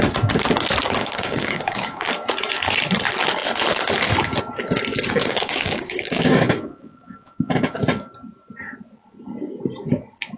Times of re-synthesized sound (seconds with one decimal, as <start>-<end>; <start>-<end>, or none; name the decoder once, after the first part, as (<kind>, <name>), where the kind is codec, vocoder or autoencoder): 1.0-2.1 (codec, DAC); 5.2-7.8